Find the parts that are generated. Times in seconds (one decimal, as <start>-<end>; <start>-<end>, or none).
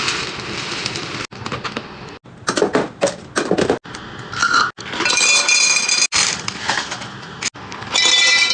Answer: none